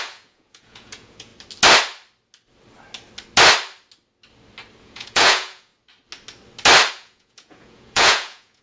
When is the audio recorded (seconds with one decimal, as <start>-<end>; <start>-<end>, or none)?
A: 1.3-4.8; 5.7-6.9